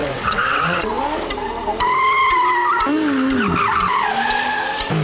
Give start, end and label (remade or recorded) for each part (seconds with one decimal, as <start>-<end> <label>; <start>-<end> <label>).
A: 0.0-1.0 remade; 1.0-5.0 recorded